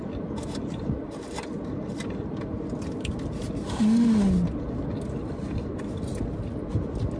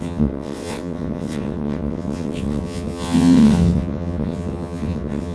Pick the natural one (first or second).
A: first